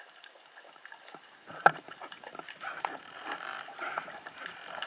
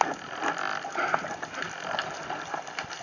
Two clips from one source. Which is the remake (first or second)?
first